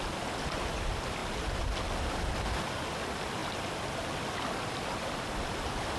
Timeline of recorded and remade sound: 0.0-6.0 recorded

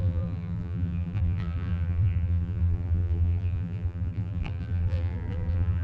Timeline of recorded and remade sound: 0.0-5.8 remade

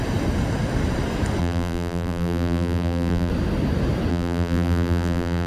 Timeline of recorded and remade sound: 0.0-1.4 recorded; 1.4-3.3 remade; 3.3-4.1 recorded; 4.1-5.5 remade